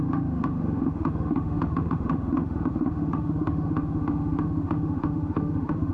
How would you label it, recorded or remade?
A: remade